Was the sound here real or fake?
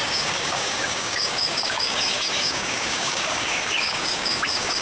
fake